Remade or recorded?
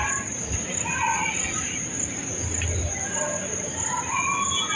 recorded